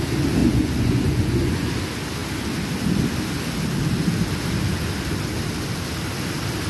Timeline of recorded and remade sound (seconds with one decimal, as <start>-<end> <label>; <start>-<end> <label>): 0.0-0.4 recorded; 0.4-1.7 remade; 1.7-6.7 recorded